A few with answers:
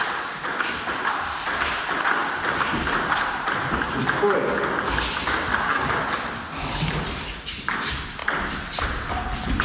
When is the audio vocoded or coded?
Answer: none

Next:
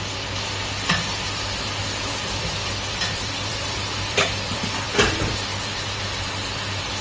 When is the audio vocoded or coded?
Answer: 1.8-5.1 (vocoder, BigVGAN v2); 5.5-6.3

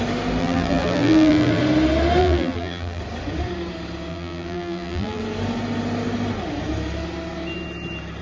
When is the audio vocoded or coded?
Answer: 0.4-1.6 (vocoder, BigVGAN v2); 2.2-3.0; 4.1-5.2

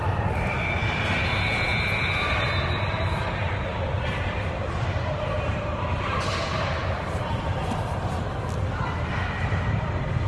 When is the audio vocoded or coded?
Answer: 3.7-8.4 (vocoder, BigVGAN v2)

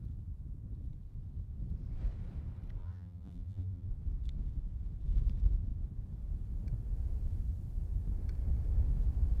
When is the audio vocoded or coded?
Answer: 2.8-3.9 (vocoder, BigVGAN v2)

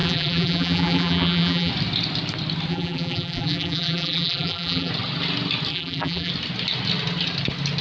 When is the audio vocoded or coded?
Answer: 0.0-1.7 (vocoder, BigVGAN v2); 2.7-4.9; 5.7-6.3

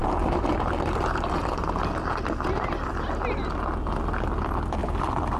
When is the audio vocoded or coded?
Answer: 0.0-3.2 (vocoder, BigVGAN v2); 4.8-5.4

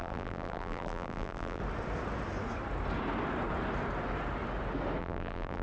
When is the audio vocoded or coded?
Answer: 0.0-1.6 (vocoder, BigVGAN v2); 5.0-5.6